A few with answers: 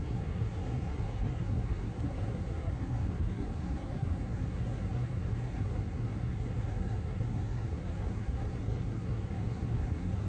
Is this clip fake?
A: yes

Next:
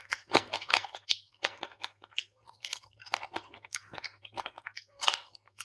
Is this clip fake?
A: yes